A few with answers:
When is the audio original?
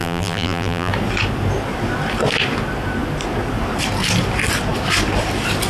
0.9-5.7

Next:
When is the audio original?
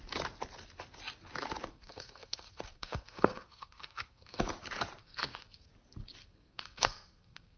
0.0-1.7; 4.4-5.0; 5.7-6.2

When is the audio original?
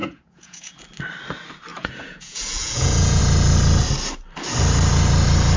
0.8-1.7; 3.2-5.6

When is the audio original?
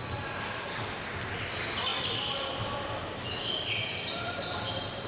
0.0-5.1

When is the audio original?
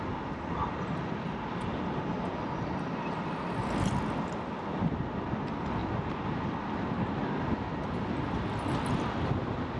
0.0-9.8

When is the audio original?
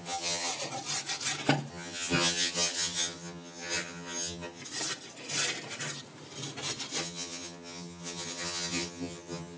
0.5-1.7; 4.6-7.0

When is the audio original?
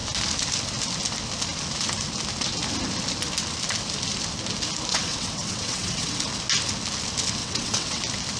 0.0-4.9; 6.2-7.4; 8.0-8.4